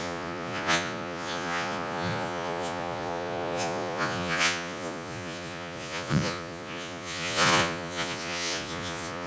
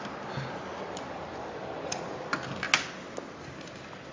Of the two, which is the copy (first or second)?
first